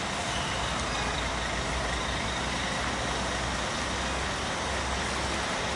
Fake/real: real